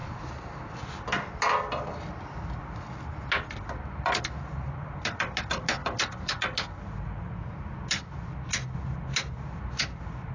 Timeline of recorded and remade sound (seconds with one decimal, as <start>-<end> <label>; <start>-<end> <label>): 0.0-10.3 recorded